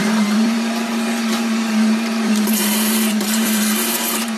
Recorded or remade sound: remade